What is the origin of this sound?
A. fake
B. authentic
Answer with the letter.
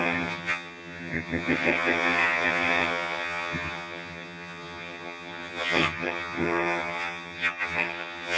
A